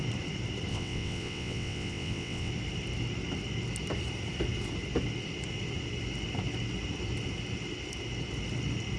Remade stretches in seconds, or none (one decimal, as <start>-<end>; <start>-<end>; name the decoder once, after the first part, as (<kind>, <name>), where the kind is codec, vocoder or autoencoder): 0.7-2.5 (vocoder, WaveNeXt)